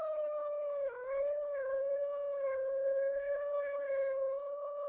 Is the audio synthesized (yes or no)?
yes